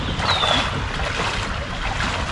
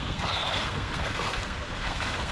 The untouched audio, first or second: first